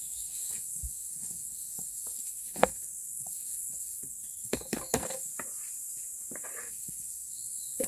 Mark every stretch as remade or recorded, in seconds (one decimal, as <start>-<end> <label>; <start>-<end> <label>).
0.0-5.3 remade; 5.3-6.6 recorded; 6.6-7.9 remade